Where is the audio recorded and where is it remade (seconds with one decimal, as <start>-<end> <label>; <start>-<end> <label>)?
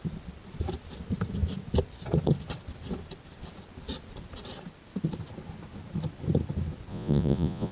0.0-6.9 recorded; 6.9-7.7 remade